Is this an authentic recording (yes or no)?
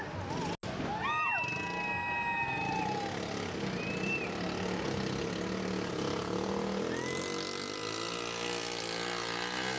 yes